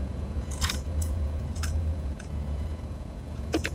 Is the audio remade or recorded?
remade